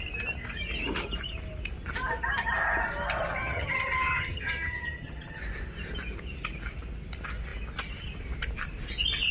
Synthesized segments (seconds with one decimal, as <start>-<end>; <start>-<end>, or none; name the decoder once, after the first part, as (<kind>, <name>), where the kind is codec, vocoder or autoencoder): 3.4-5.4 (vocoder, HiFi-GAN)